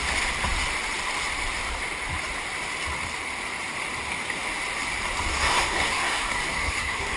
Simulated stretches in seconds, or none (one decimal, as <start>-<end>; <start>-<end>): 5.3-7.2